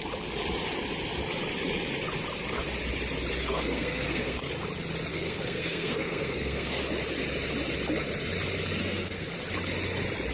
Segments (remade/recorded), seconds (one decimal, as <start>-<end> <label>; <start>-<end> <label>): 0.0-3.4 recorded; 3.4-4.5 remade; 4.5-5.1 recorded; 5.1-6.8 remade; 6.8-8.8 recorded; 8.8-9.3 remade; 9.3-10.3 recorded